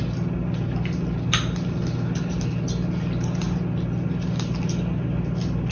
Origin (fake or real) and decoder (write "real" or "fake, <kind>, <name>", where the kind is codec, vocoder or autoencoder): real